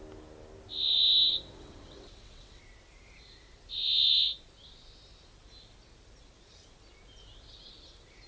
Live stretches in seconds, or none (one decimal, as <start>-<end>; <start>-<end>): 0.0-1.3; 2.6-8.3